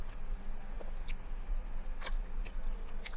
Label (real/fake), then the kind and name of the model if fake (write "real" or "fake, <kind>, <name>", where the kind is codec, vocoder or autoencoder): real